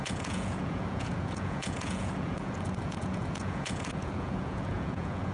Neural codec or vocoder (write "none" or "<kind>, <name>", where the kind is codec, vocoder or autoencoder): vocoder, Vocos